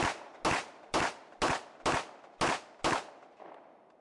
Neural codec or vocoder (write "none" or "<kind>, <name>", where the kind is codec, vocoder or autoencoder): none